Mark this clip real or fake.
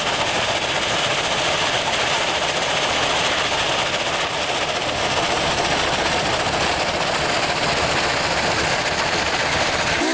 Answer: real